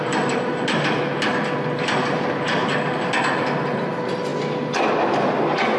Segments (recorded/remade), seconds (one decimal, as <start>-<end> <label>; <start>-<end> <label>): 0.0-5.8 recorded